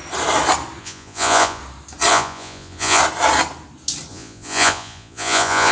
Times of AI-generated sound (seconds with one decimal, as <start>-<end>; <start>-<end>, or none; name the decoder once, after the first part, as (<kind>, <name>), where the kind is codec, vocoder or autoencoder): 0.8-1.6 (vocoder, Vocos); 2.1-3.0; 4.1-5.7